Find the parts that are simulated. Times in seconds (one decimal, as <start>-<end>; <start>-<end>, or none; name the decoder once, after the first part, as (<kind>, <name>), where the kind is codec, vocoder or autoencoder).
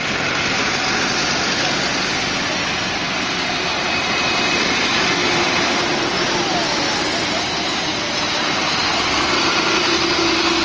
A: 5.2-10.0 (vocoder, BigVGAN v2)